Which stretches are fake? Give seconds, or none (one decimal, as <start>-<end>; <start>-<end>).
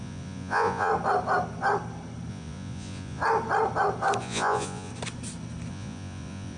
0.0-0.9; 2.3-3.2; 4.2-4.9; 5.7-6.6